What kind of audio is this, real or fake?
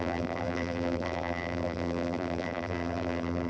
fake